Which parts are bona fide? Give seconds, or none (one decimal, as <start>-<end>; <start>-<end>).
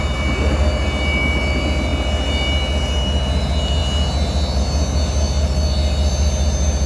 0.0-6.9